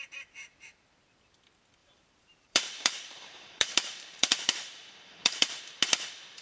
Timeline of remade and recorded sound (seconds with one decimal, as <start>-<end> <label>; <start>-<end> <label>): 0.0-1.8 recorded; 1.8-5.6 remade; 5.6-6.4 recorded